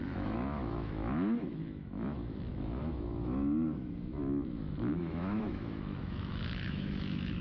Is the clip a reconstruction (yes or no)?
yes